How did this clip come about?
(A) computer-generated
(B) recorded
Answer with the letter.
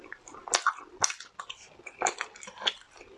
B